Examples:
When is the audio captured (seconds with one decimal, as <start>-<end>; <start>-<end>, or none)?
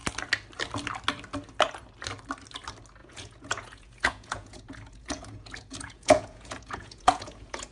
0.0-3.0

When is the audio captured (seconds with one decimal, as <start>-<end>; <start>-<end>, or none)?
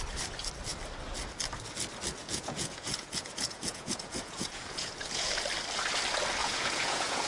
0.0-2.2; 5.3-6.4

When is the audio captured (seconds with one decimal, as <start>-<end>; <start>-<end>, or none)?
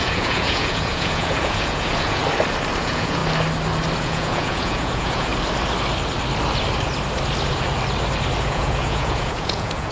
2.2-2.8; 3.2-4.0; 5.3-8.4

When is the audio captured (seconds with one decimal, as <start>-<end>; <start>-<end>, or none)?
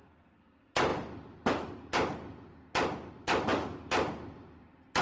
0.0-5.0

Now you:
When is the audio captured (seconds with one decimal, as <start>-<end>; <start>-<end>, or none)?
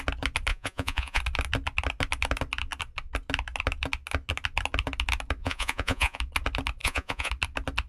0.0-0.5; 1.2-5.4; 6.2-6.8; 7.3-7.9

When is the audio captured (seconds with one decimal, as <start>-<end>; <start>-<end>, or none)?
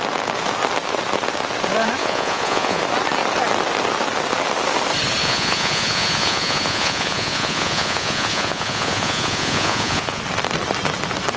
0.0-2.0; 2.8-5.2; 10.2-11.4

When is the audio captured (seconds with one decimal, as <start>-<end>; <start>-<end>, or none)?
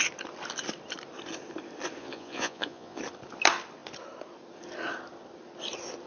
0.0-2.0; 3.0-6.1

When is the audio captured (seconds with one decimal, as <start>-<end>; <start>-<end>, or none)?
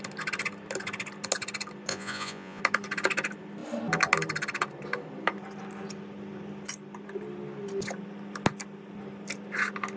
0.0-1.9; 2.6-10.0